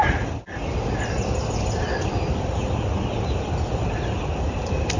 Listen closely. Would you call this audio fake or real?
real